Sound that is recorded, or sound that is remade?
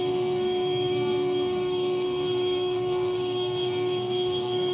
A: remade